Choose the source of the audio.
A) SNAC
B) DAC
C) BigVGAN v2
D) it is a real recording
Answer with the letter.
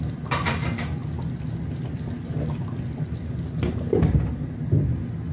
D